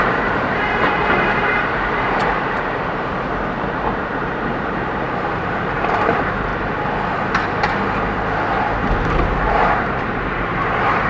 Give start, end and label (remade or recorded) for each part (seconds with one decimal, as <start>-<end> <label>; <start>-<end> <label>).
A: 0.0-6.5 remade; 6.5-8.9 recorded; 8.9-11.1 remade